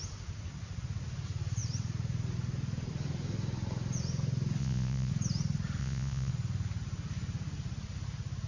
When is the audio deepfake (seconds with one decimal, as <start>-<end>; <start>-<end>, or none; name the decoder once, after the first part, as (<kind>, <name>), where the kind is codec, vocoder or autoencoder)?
4.6-5.1 (vocoder, Vocos); 5.8-6.3